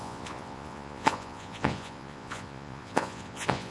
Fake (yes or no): yes